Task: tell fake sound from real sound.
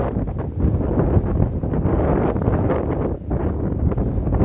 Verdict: real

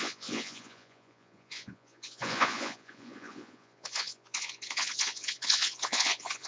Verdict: fake